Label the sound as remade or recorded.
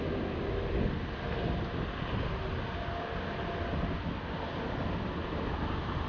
recorded